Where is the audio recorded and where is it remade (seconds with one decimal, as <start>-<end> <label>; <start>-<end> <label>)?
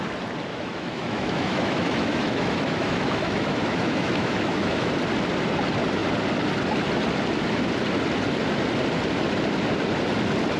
0.0-0.5 recorded; 0.5-4.9 remade; 4.9-10.6 recorded